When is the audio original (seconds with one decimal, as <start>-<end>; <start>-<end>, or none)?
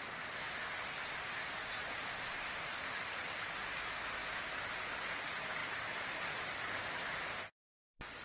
0.8-5.6